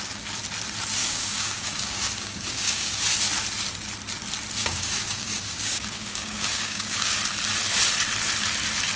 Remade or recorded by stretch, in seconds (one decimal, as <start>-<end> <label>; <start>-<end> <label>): 0.0-1.0 recorded; 1.0-3.0 remade; 3.0-4.6 recorded; 4.6-7.2 remade; 7.2-9.0 recorded